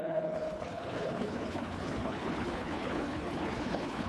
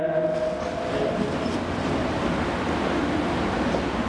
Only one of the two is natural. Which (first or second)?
second